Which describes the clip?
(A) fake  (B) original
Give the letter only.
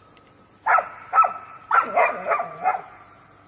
B